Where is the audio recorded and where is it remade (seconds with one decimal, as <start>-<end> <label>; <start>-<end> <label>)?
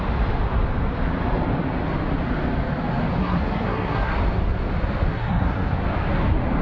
0.0-3.2 recorded; 3.2-4.1 remade; 4.1-5.1 recorded; 5.1-5.8 remade; 5.8-6.6 recorded